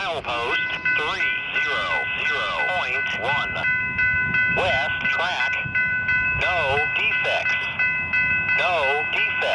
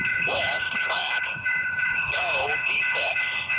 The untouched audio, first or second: first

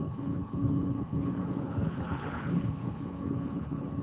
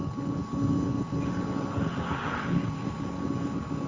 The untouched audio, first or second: second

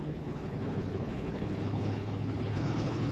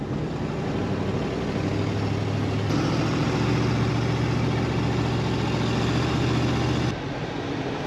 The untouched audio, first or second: second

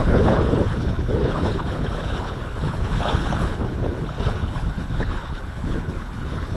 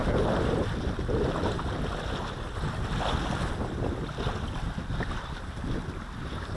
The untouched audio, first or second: second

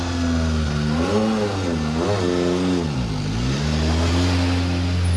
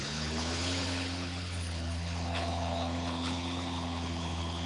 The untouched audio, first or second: first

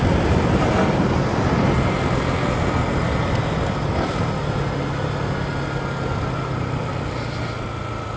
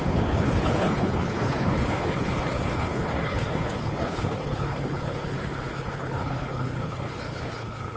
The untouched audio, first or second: first